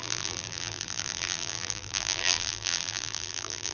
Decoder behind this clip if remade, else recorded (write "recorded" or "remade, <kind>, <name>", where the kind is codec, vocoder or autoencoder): remade, vocoder, BigVGAN v2